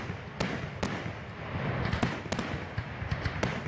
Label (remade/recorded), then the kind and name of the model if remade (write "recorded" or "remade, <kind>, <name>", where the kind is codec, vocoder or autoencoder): recorded